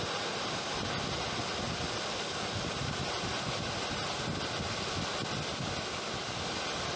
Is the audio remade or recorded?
recorded